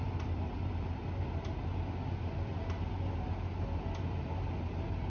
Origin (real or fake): real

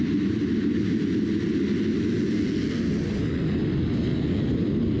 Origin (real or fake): real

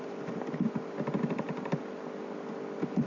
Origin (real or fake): real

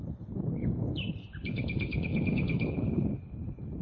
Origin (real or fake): fake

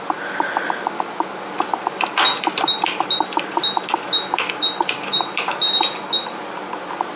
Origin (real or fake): real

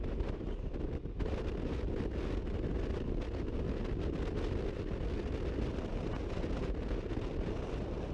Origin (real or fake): real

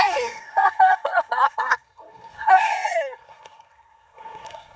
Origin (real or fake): fake